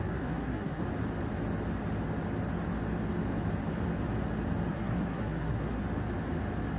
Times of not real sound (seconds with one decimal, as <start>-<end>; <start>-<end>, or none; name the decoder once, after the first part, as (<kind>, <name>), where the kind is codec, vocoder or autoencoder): 0.0-0.8 (codec, SNAC); 4.7-5.8